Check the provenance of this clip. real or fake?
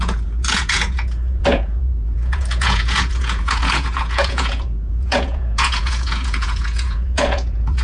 fake